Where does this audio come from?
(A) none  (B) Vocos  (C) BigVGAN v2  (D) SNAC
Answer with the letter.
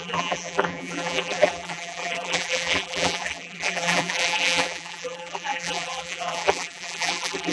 C